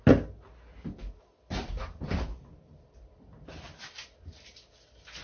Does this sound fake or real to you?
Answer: real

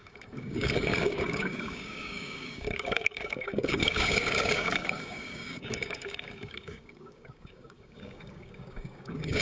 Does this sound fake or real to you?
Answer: fake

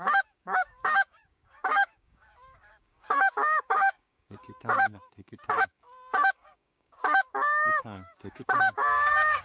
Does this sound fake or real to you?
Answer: fake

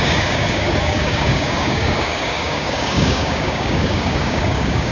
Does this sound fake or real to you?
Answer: fake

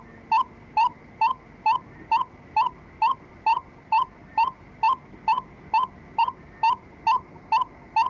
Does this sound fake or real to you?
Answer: real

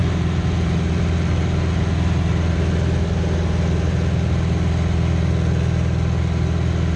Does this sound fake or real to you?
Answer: real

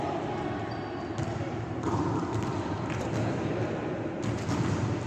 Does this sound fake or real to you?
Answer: real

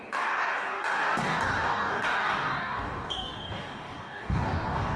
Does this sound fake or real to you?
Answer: fake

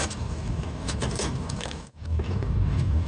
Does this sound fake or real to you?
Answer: fake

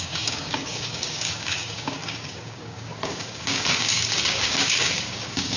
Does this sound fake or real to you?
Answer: fake